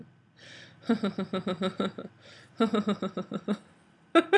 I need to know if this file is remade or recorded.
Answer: recorded